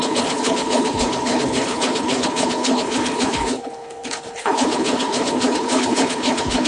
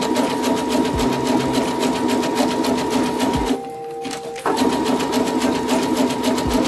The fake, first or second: first